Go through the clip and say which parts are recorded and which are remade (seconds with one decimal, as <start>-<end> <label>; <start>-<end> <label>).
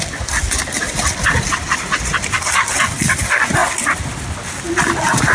0.0-5.3 recorded